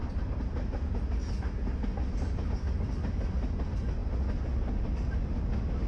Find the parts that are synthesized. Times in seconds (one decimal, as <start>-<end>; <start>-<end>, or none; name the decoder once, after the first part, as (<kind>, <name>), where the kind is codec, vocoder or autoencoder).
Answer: none